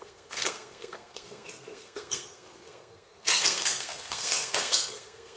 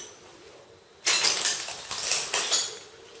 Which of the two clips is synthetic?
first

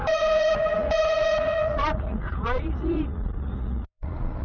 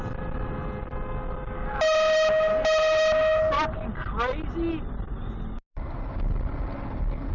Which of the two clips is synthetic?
first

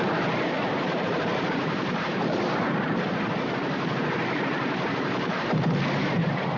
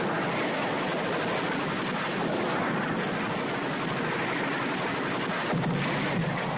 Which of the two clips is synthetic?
first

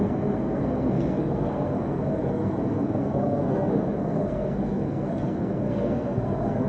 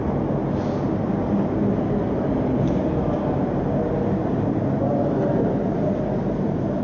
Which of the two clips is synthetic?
first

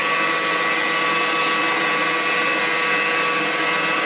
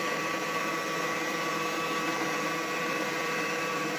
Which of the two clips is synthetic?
second